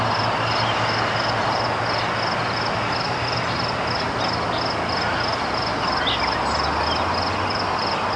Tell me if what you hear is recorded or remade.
recorded